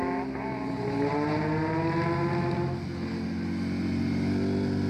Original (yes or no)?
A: yes